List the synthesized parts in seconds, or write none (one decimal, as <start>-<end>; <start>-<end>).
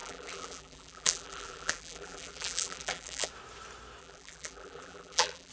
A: 0.0-3.3; 4.0-5.5